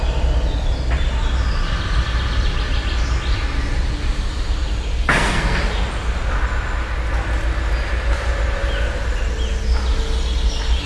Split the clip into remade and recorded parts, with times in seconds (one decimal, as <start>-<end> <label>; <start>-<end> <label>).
0.0-4.9 recorded; 4.9-5.6 remade; 5.6-10.9 recorded